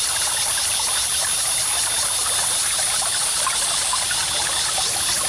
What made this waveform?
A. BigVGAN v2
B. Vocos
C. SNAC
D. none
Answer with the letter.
D